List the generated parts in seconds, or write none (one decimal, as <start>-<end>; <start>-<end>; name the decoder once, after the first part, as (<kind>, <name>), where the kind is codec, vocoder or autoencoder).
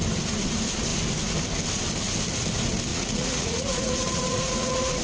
2.9-5.0 (vocoder, Vocos)